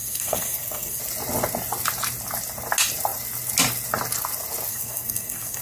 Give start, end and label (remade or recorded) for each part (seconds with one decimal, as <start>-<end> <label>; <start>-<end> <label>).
0.0-1.0 remade; 1.0-4.7 recorded; 4.7-5.6 remade